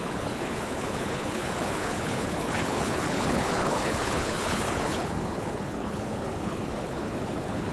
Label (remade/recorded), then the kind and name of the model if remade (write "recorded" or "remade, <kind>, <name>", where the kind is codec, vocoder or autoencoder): remade, codec, HILCodec